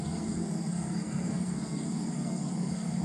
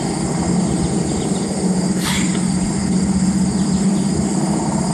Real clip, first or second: second